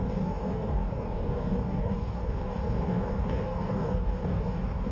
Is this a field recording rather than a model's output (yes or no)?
no